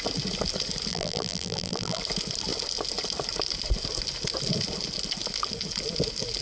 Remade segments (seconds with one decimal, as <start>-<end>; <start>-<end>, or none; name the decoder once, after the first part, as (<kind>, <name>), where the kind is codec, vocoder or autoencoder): 0.9-2.0 (vocoder, BigVGAN v2)

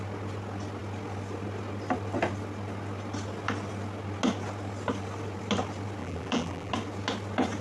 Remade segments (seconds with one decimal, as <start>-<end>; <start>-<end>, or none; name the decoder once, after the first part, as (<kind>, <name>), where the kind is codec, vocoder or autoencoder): 6.0-6.7 (vocoder, BigVGAN v2)

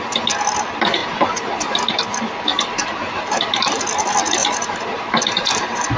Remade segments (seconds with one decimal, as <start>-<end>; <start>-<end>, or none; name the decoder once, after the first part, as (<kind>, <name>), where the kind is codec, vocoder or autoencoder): 1.0-2.0 (vocoder, BigVGAN v2); 2.5-3.8; 4.4-6.0

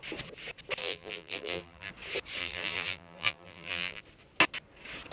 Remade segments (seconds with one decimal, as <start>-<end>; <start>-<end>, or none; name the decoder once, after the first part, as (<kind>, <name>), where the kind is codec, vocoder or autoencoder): 0.8-1.9 (vocoder, BigVGAN v2); 2.4-4.0

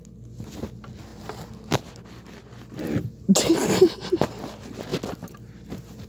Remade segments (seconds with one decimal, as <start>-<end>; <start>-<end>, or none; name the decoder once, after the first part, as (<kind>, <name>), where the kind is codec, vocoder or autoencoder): none